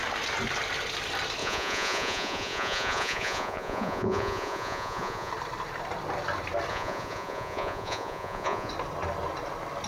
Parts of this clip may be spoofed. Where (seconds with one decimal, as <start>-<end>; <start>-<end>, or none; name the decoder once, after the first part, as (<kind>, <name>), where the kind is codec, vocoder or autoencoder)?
1.4-5.3 (vocoder, Vocos); 6.7-8.7